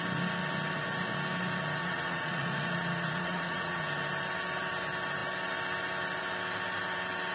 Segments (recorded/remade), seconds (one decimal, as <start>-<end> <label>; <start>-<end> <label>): 0.0-1.8 recorded; 1.8-3.9 remade; 3.9-7.3 recorded